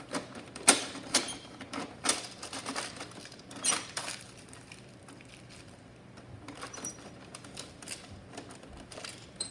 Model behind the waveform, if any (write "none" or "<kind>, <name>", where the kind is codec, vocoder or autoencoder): vocoder, BigVGAN v2